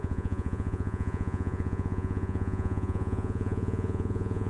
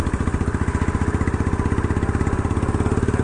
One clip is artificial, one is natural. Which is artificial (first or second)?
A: first